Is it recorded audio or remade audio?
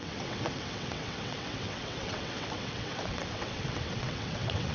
remade